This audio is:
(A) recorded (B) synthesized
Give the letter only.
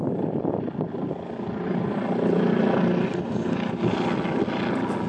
A